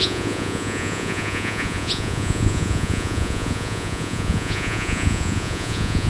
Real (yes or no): no